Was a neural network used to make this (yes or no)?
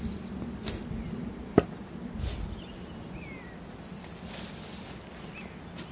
no